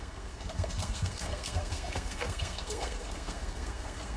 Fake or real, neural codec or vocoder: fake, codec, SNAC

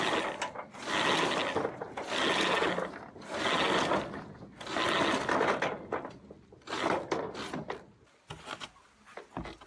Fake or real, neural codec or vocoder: real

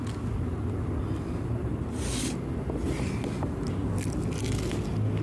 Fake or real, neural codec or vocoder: real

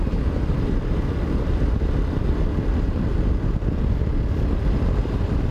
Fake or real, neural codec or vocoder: real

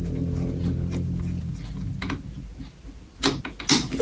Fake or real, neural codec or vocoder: real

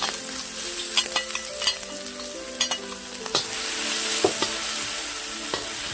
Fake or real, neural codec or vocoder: real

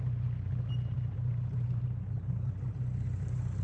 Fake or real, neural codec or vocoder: real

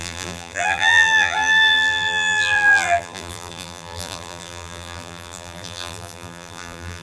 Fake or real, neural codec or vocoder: fake, vocoder, BigVGAN v2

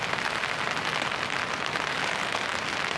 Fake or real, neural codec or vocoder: real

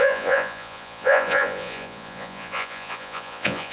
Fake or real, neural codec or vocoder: fake, vocoder, Vocos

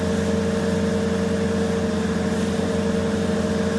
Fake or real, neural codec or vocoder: real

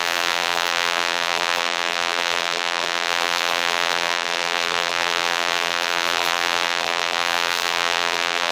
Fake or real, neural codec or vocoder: fake, vocoder, BigVGAN v2